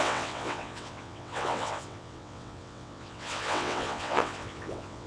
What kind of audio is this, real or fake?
fake